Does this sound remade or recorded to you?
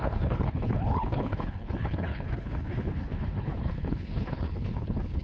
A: remade